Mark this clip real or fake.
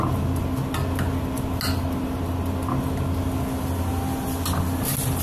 real